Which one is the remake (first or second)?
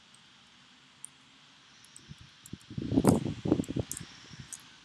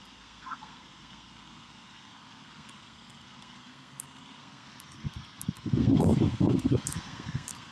second